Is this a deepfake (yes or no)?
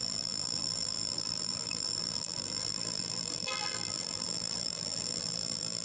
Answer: yes